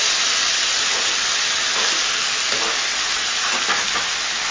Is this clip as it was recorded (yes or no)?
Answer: yes